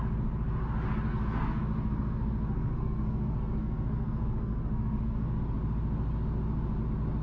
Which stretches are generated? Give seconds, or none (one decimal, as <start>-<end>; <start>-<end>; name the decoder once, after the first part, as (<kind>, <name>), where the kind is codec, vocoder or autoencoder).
1.1-5.4 (codec, SNAC)